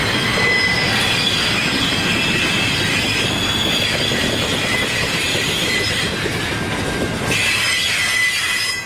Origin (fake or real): real